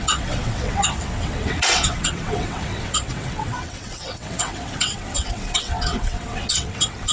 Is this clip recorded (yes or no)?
no